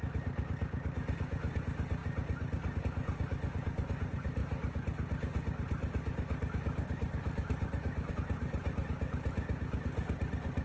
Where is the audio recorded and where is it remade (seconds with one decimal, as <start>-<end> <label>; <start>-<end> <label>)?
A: 0.0-10.6 recorded